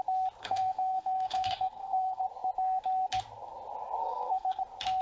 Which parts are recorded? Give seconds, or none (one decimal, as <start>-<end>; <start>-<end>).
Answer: 0.0-0.4; 2.2-4.0; 4.6-5.0